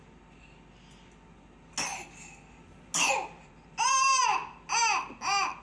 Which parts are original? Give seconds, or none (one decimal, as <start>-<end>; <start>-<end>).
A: 0.0-5.6